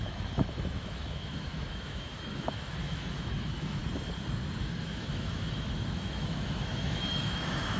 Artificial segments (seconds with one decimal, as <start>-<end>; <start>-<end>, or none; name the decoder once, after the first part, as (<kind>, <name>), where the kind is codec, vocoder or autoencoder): 0.0-3.8 (autoencoder, DAC-VAE); 4.6-7.8